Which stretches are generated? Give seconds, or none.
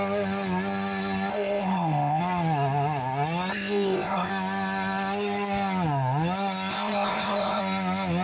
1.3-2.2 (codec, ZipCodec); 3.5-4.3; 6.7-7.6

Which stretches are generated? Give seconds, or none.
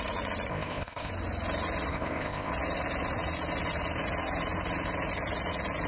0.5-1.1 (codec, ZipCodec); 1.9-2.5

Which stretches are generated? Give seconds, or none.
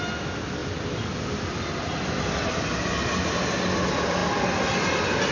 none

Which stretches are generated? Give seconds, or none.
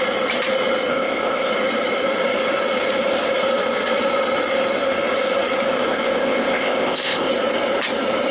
0.9-1.5 (codec, ZipCodec); 5.7-7.3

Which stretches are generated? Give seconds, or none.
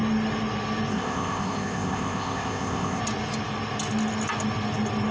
0.9-3.0 (codec, ZipCodec)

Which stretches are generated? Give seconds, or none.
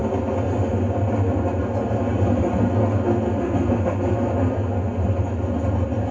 none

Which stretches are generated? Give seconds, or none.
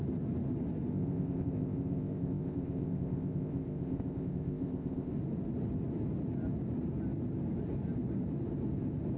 0.9-5.1 (codec, ZipCodec)